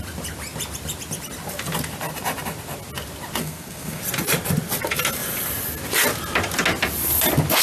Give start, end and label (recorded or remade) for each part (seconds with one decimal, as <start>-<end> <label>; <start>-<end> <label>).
0.0-3.4 recorded; 3.4-4.0 remade; 4.0-7.6 recorded